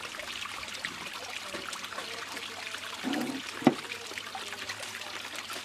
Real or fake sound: real